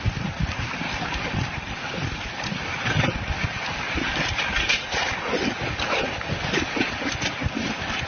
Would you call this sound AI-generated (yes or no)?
no